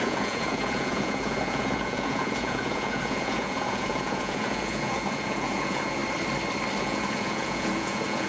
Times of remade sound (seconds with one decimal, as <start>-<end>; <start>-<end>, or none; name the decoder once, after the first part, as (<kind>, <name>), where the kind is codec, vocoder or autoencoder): 0.0-6.0 (vocoder, Vocos); 6.8-8.3